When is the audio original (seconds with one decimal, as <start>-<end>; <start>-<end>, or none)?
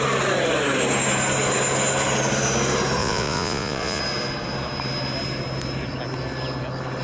0.0-3.0; 4.0-7.0